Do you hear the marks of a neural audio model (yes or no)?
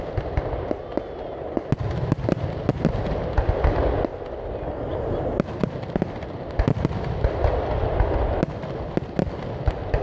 no